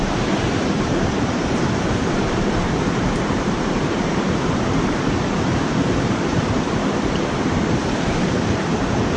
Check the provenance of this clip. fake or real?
fake